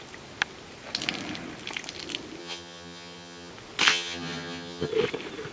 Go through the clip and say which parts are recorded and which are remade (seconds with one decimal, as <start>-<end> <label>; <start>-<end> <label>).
0.0-2.4 recorded; 2.4-3.5 remade; 3.5-3.9 recorded; 3.9-4.9 remade; 4.9-5.5 recorded